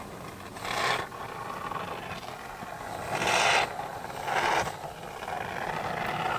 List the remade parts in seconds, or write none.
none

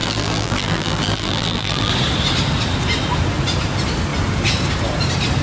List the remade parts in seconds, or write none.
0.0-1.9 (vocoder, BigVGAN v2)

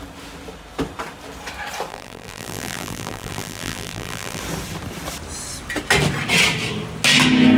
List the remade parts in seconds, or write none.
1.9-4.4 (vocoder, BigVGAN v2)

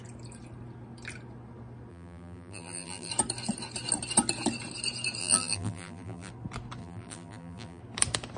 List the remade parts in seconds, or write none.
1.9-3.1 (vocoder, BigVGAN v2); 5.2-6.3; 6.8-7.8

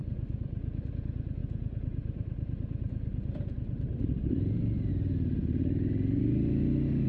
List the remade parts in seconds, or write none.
1.4-4.9 (vocoder, BigVGAN v2)